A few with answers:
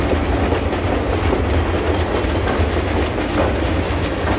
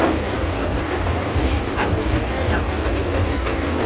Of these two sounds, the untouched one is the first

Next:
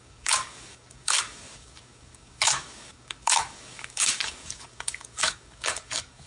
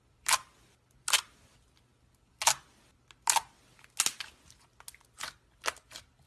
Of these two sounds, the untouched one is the second